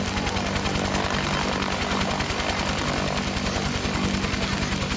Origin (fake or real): real